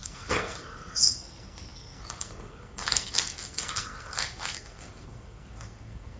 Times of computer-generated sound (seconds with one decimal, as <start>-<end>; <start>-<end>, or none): 0.0-6.2